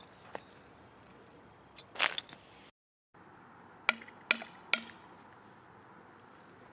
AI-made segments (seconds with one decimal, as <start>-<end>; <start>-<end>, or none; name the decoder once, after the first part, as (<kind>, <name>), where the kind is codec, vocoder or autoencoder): none